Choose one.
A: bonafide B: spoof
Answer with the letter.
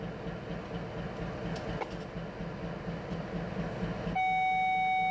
A